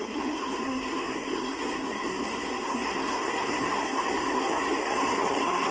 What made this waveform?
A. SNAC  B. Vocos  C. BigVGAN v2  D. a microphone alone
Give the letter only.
A